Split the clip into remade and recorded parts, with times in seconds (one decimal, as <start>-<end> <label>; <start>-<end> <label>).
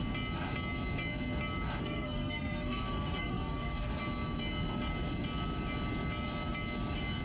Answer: 0.0-1.8 recorded; 1.8-4.0 remade; 4.0-7.2 recorded